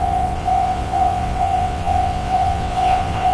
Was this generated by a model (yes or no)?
yes